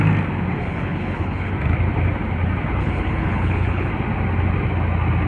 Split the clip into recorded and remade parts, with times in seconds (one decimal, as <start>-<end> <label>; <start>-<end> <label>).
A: 0.0-0.5 recorded; 0.5-1.5 remade; 1.5-2.8 recorded; 2.8-3.9 remade; 3.9-5.3 recorded